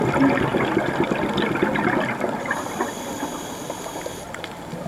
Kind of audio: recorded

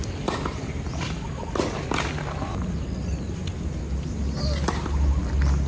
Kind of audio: recorded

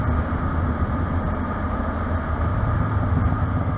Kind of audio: recorded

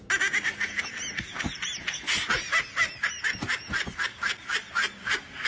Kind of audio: recorded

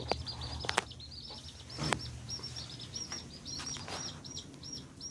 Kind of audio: recorded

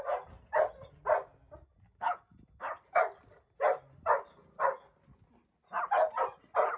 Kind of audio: recorded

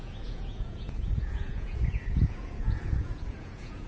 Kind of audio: remade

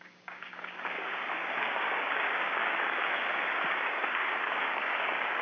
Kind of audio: remade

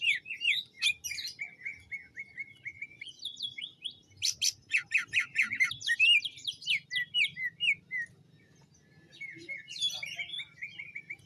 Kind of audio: recorded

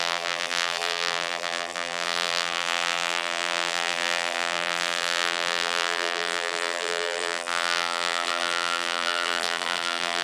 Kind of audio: remade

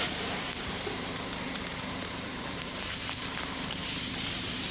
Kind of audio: remade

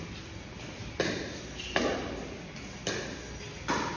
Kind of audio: recorded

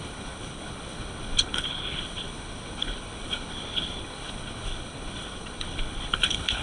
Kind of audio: remade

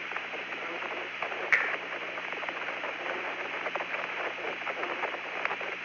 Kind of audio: recorded